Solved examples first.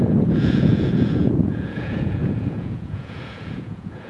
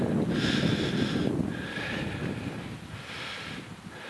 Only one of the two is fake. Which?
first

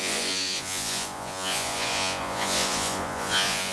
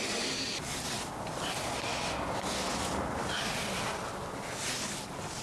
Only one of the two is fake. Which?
first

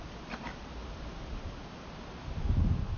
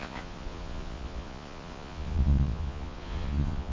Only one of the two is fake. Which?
second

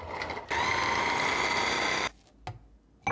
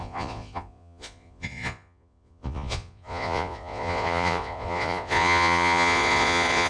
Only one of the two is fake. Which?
second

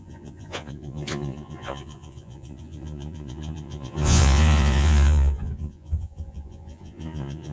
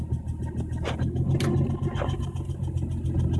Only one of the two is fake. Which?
first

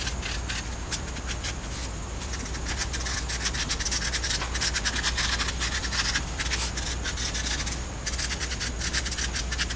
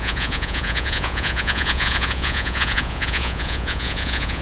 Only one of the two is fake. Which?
second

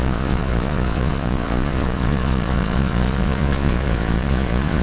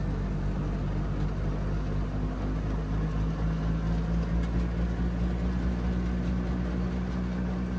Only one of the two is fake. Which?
first